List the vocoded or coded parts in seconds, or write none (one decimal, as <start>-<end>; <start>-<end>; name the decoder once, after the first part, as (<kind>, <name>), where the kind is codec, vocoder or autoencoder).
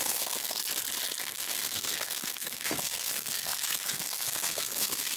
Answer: 0.0-0.6 (codec, SNAC); 1.2-5.2